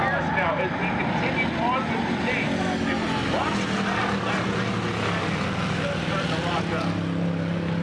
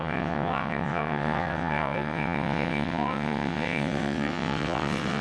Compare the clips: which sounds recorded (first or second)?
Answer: first